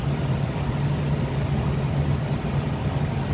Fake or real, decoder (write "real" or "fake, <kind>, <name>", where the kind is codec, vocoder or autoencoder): real